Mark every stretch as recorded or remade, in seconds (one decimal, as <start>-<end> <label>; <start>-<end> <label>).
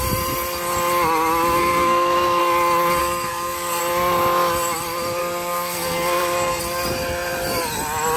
0.0-1.6 recorded; 1.6-2.4 remade; 2.4-3.0 recorded; 3.0-3.8 remade; 3.8-5.2 recorded; 5.2-6.6 remade; 6.6-8.2 recorded